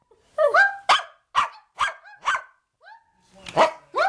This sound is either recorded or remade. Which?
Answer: recorded